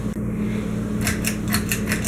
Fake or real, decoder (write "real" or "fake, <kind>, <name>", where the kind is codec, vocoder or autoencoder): real